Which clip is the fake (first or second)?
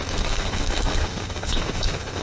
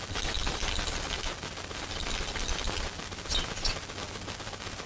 first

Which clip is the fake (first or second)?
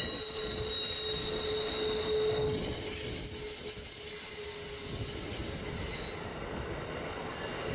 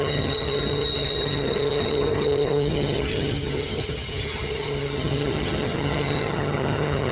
second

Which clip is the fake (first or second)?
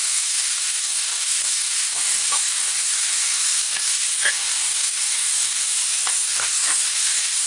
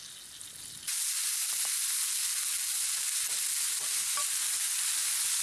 first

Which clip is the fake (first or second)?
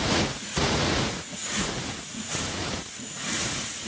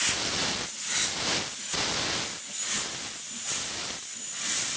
first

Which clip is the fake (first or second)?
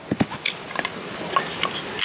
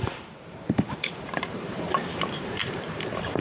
second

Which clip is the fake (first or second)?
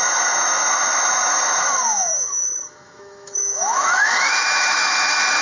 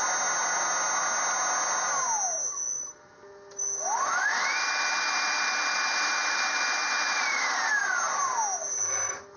first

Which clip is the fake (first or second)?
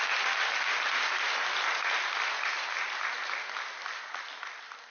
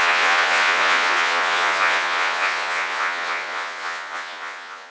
second